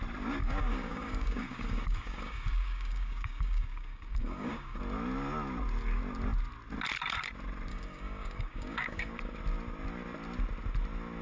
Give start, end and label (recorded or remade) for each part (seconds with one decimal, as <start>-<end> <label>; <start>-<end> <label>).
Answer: 0.0-0.4 recorded; 0.4-4.8 remade; 4.8-7.7 recorded; 7.7-9.1 remade; 9.1-11.2 recorded